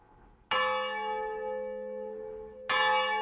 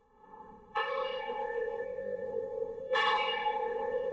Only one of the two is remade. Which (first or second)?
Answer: second